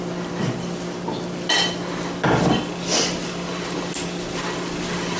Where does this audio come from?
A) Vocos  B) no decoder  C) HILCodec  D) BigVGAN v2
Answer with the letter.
B